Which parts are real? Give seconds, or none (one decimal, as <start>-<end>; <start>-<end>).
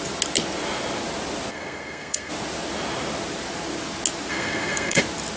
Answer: 0.0-1.5; 2.3-4.3; 5.0-5.4